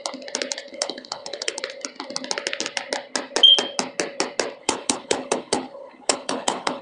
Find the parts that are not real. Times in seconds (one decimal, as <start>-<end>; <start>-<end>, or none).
0.7-1.6; 4.6-6.8